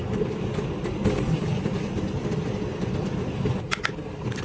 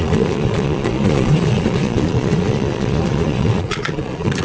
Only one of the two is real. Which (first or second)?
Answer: first